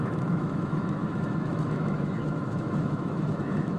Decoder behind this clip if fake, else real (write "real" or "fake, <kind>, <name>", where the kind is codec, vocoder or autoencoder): fake, autoencoder, DAC-VAE